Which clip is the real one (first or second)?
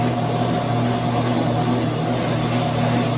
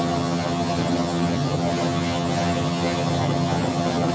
first